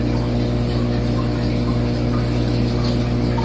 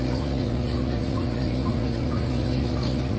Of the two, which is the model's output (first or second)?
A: second